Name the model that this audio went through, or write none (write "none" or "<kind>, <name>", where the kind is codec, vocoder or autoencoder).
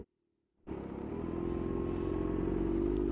none